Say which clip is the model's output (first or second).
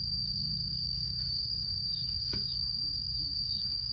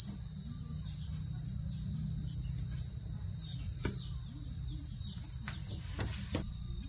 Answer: first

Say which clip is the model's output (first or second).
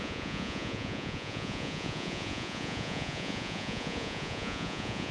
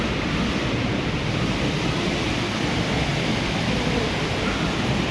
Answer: first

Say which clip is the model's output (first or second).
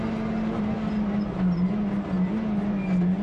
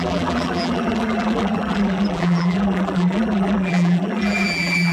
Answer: second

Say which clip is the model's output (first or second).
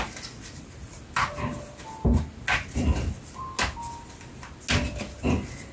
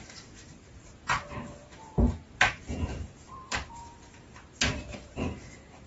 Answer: second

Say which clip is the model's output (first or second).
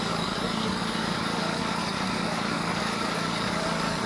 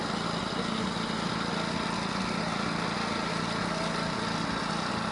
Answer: first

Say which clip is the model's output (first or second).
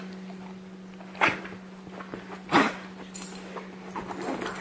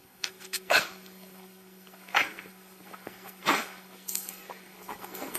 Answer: second